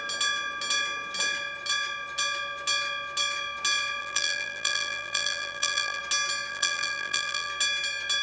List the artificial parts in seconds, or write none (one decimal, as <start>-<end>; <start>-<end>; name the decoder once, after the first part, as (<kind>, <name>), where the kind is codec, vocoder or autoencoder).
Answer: 4.0-6.0 (vocoder, BigVGAN v2); 6.5-7.5

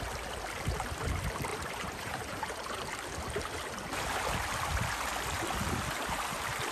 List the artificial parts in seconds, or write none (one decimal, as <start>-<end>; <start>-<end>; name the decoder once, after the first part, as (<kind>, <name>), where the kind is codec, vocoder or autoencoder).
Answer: 1.5-2.8 (vocoder, BigVGAN v2)

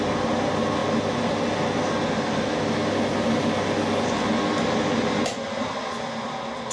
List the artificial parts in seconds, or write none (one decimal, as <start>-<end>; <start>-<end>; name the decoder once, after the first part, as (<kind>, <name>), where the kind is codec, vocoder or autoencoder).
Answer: none

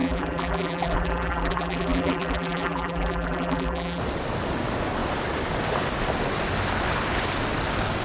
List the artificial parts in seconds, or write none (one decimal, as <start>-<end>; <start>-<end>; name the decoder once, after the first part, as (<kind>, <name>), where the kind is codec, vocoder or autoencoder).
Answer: 0.0-4.0 (vocoder, BigVGAN v2)